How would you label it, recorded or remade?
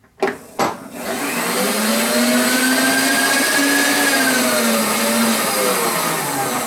recorded